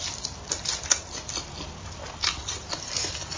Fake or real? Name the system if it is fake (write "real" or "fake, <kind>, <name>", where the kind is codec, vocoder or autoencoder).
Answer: real